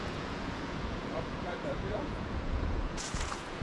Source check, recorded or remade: remade